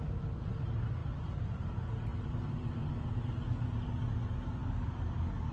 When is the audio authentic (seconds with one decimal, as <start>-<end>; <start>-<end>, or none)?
0.0-4.6